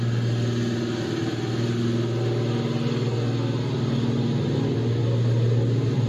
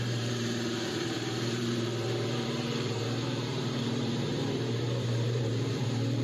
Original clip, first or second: first